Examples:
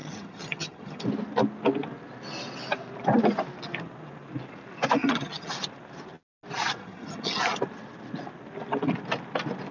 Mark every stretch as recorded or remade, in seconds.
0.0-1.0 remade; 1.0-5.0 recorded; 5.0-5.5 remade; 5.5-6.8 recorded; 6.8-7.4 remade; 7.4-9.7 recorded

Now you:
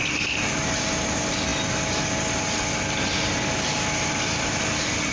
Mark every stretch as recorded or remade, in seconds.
0.0-5.1 recorded

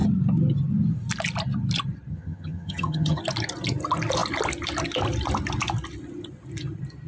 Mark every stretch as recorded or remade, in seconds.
0.0-2.1 recorded; 2.1-3.2 remade; 3.2-7.1 recorded

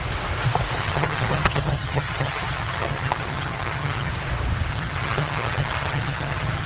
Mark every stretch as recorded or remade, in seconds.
0.0-0.8 recorded; 0.8-4.1 remade; 4.1-4.7 recorded; 4.7-6.7 remade